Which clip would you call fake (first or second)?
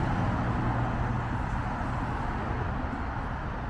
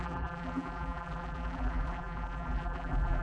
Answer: second